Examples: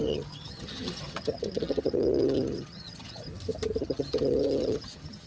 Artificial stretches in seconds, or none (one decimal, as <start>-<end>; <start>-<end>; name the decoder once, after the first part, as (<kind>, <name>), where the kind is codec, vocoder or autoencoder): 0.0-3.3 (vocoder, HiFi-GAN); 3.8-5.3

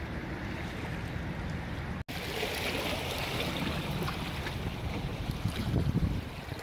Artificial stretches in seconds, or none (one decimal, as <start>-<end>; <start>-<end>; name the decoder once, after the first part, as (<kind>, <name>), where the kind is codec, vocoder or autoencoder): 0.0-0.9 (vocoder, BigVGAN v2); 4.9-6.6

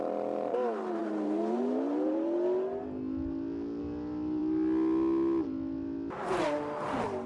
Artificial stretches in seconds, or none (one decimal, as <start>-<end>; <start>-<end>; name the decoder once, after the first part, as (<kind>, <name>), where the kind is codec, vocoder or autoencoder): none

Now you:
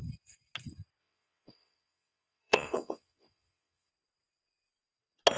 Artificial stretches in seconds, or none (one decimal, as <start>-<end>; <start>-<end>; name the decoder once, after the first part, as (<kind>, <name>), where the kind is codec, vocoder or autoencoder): 1.0-3.9 (vocoder, WaveNeXt)

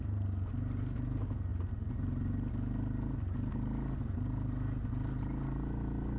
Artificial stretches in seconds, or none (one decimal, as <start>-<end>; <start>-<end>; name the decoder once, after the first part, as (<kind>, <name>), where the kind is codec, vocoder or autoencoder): none

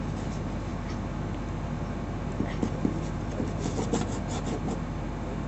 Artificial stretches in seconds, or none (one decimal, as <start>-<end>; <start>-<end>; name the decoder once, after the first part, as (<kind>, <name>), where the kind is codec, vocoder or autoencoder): none

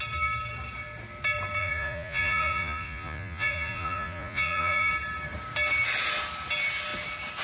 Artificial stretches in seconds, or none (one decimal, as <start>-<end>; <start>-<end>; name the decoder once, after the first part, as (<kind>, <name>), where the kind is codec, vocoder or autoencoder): 1.6-4.9 (vocoder, Vocos)